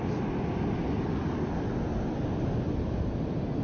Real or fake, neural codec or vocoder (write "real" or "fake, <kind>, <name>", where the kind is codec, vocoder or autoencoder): real